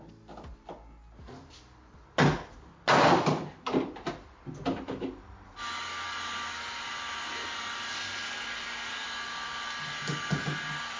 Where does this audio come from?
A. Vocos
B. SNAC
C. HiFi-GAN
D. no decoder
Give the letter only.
D